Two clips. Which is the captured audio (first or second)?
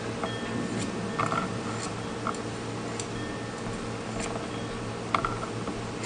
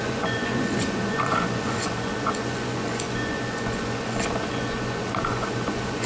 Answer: first